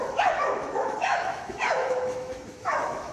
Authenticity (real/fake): fake